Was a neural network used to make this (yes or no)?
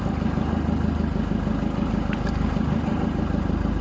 no